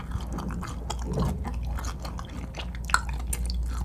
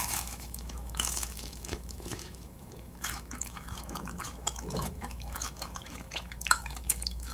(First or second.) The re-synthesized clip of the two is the second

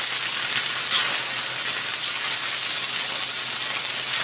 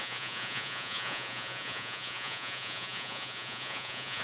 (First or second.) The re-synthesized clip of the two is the second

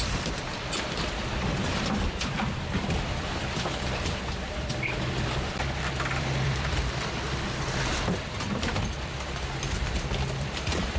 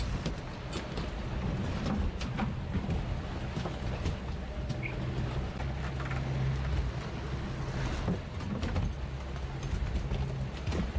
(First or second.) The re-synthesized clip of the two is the first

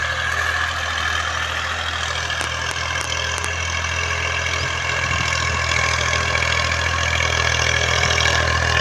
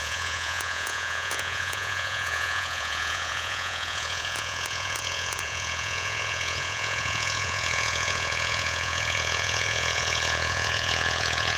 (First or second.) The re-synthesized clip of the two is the second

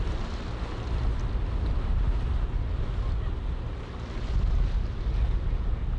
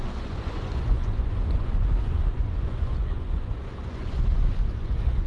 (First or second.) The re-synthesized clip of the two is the second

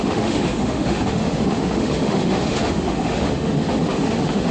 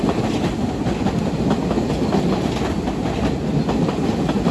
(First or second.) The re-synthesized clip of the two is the first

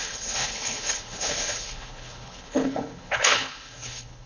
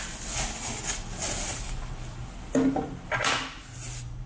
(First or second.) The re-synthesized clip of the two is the first